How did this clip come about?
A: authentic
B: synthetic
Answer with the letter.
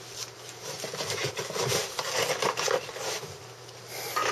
A